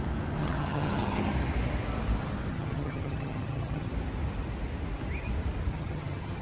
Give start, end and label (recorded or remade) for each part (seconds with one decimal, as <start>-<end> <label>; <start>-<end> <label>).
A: 0.0-0.4 recorded; 0.4-1.3 remade; 1.3-2.5 recorded; 2.5-3.9 remade; 3.9-5.7 recorded; 5.7-6.4 remade

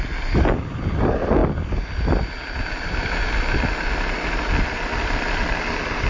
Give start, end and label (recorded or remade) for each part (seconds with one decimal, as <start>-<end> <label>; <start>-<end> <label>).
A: 0.0-6.1 recorded

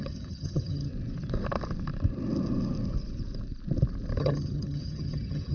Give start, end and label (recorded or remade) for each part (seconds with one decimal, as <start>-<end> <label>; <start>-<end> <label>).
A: 0.0-0.9 remade; 0.9-4.2 recorded; 4.2-5.5 remade